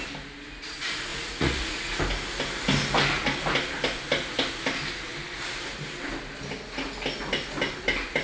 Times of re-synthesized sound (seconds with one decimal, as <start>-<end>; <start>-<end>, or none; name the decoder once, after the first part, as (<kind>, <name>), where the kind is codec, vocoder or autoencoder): 1.1-2.0 (vocoder, Vocos)